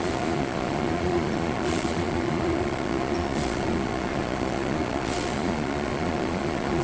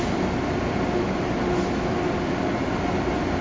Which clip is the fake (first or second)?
first